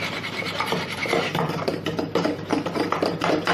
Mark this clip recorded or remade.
remade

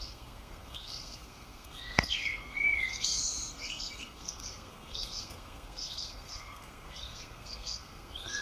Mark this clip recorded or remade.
remade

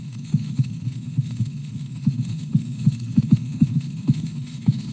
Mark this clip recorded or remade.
remade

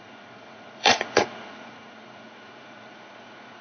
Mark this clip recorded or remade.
remade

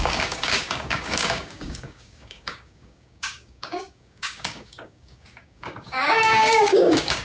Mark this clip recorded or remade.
remade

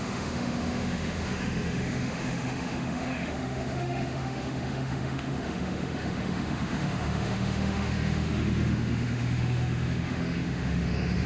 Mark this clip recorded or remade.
remade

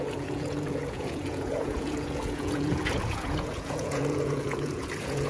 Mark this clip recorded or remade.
remade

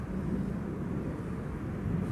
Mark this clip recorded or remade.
recorded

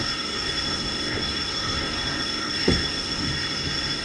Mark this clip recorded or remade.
remade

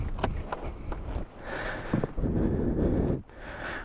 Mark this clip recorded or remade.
recorded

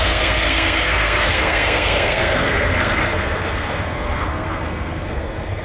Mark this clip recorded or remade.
remade